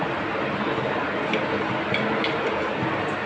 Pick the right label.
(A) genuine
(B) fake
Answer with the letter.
A